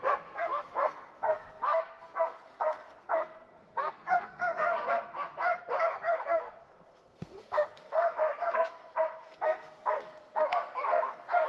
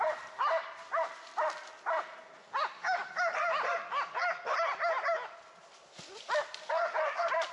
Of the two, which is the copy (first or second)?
first